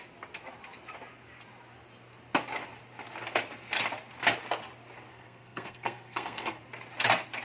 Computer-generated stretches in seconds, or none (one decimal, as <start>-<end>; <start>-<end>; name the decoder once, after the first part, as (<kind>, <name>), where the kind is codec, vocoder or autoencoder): 5.1-6.6 (codec, SNAC)